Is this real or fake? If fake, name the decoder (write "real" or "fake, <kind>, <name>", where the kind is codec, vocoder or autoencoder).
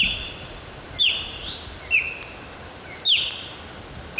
real